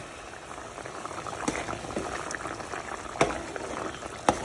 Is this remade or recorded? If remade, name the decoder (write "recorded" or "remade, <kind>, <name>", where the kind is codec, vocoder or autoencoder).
recorded